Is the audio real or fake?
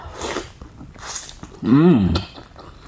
fake